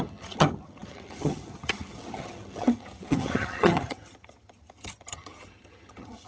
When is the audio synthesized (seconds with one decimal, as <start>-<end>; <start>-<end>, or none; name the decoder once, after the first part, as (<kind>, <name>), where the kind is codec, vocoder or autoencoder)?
0.0-6.3 (vocoder, HiFi-GAN)